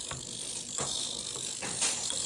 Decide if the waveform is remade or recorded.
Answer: recorded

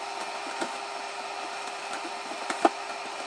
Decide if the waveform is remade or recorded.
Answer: recorded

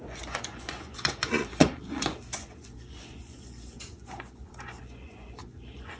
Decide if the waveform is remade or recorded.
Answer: remade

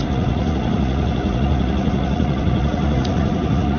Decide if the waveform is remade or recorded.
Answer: remade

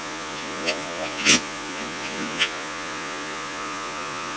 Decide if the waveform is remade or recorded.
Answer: remade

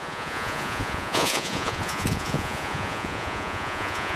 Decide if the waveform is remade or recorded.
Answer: remade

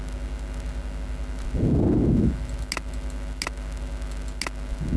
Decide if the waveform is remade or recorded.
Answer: recorded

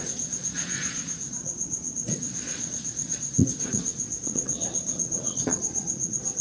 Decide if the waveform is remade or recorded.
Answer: remade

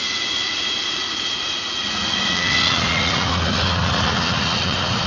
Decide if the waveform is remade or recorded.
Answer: remade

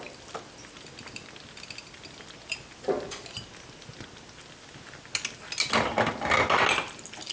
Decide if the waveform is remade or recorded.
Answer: recorded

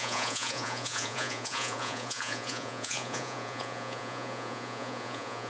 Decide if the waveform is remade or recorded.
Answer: remade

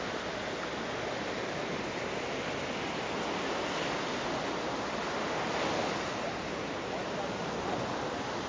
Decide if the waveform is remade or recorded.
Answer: recorded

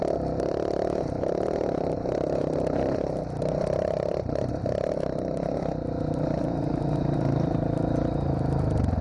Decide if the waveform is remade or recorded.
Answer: recorded